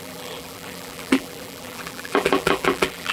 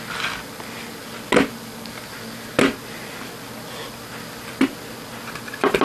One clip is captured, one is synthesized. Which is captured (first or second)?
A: second